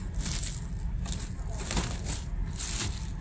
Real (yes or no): yes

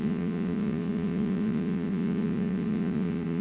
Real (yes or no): no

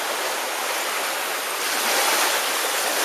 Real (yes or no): yes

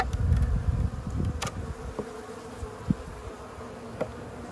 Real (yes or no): yes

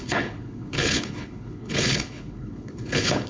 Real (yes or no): no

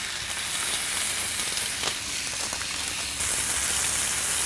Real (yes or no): yes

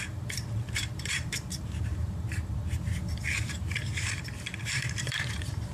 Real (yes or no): no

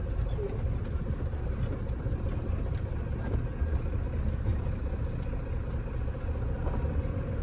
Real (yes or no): yes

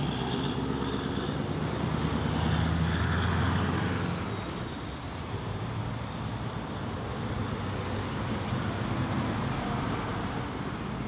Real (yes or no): yes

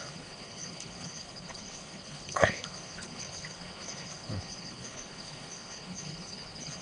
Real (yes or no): no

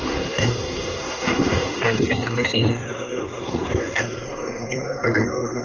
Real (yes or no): no